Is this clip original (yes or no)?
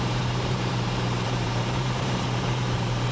no